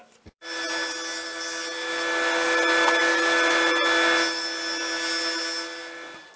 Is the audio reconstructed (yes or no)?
no